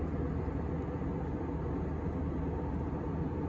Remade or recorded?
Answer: recorded